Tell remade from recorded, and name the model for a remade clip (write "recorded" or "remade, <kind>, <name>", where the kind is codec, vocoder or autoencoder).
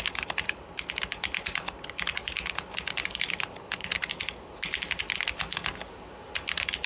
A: recorded